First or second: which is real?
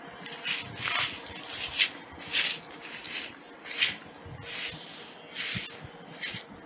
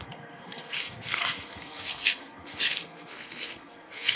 first